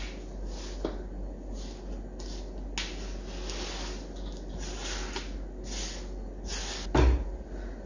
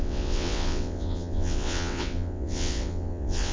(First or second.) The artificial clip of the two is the second